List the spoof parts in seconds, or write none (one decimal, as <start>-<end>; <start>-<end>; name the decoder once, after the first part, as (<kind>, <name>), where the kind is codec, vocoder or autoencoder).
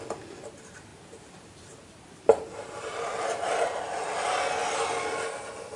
0.9-3.8 (vocoder, BigVGAN v2)